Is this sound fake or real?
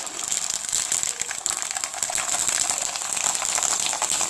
real